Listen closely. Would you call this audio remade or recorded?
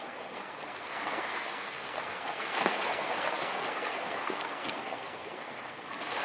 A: remade